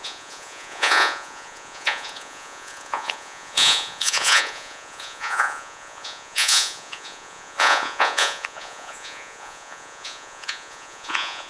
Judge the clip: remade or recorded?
remade